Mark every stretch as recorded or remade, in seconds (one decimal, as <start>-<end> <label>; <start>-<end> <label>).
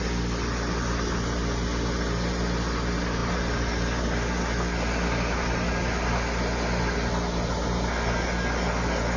0.0-9.2 recorded